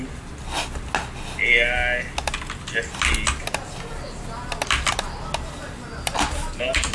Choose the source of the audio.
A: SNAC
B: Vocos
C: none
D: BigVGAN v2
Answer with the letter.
C